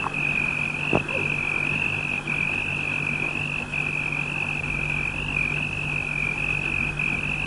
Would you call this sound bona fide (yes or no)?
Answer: yes